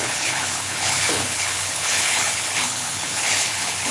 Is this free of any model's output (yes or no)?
no